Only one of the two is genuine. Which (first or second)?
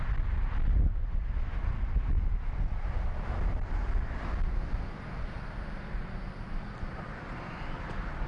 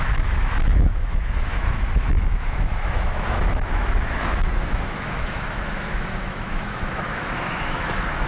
first